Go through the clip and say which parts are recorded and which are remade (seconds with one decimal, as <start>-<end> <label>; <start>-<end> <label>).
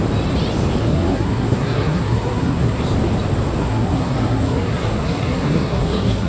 0.0-0.8 recorded; 0.8-2.8 remade; 2.8-3.6 recorded; 3.6-6.3 remade